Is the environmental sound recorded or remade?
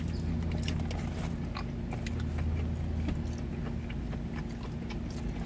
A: recorded